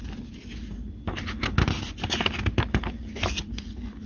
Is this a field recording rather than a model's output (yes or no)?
yes